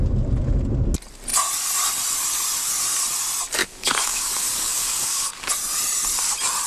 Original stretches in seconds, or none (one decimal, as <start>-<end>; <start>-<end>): 0.0-3.6; 5.5-6.7